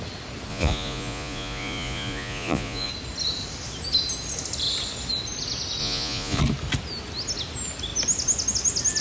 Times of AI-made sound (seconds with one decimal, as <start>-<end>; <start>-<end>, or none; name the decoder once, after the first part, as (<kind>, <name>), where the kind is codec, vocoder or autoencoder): 0.5-2.9 (vocoder, Vocos); 5.8-6.4